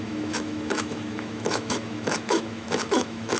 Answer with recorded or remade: remade